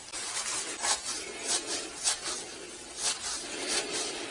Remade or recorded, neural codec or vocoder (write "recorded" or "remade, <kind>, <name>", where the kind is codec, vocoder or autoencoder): recorded